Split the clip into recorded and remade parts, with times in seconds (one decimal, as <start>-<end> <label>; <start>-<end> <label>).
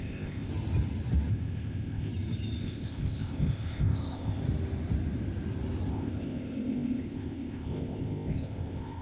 0.0-0.5 remade; 0.5-1.3 recorded; 1.3-2.1 remade; 2.1-2.6 recorded; 2.6-4.4 remade; 4.4-5.9 recorded; 5.9-9.0 remade